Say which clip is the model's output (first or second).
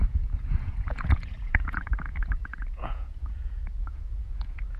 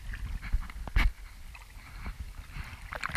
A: first